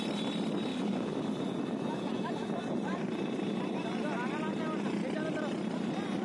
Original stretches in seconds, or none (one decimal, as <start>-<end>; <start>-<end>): 0.0-0.7; 1.3-6.2